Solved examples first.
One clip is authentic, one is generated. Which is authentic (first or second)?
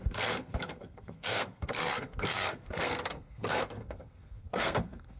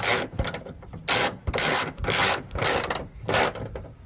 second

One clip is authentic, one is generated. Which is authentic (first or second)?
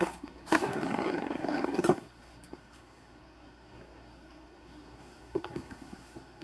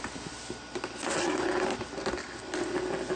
second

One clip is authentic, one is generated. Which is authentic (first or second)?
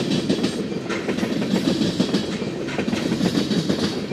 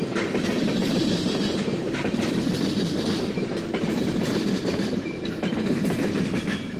first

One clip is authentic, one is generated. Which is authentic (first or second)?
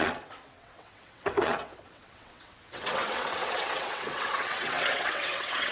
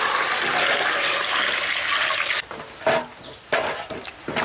second